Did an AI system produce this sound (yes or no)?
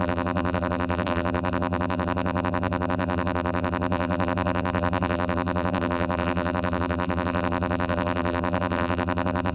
yes